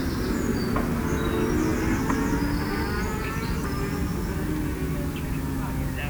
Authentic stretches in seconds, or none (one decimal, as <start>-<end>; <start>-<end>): 0.0-6.1